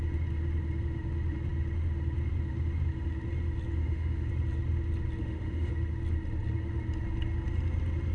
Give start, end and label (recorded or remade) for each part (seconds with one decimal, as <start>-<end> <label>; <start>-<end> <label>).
0.0-3.8 recorded; 3.8-4.3 remade; 4.3-5.2 recorded; 5.2-5.7 remade; 5.7-8.1 recorded